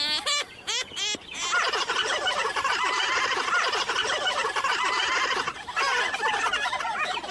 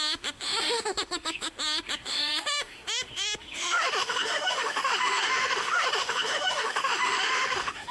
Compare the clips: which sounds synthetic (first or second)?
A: second